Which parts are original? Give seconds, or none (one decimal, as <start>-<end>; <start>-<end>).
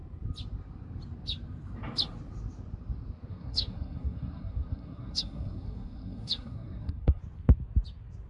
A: 0.0-3.3; 7.2-8.3